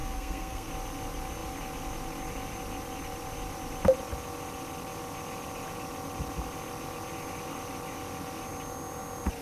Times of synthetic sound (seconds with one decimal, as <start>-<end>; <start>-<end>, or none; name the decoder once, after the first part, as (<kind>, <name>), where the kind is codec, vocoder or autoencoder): 0.0-0.7 (codec, SNAC)

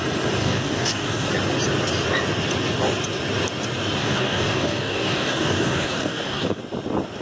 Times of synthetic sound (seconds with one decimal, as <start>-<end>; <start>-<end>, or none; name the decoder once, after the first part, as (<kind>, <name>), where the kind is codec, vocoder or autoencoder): 0.4-1.3 (codec, DAC); 4.0-6.6